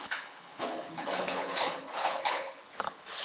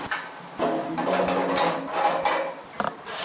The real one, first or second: second